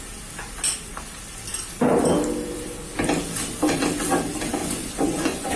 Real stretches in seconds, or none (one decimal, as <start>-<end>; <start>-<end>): 0.0-4.6